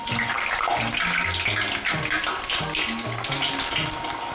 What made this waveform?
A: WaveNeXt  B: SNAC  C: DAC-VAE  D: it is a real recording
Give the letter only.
D